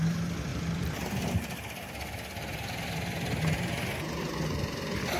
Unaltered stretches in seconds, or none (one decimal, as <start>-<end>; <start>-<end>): 0.0-0.5; 1.3-5.2

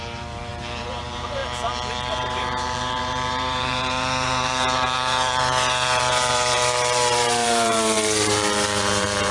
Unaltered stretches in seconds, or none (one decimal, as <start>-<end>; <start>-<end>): 1.4-2.1

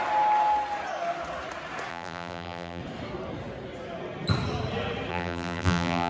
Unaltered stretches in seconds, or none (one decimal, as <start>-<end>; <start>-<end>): 0.0-1.9; 2.8-5.1

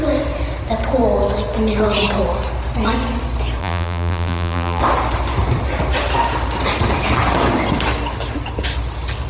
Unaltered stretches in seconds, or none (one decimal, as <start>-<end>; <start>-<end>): 0.0-3.6; 4.8-9.3

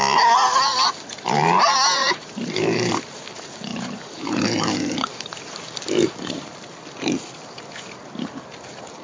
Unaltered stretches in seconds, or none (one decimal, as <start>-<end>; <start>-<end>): 0.0-2.0; 2.9-3.7; 5.6-9.0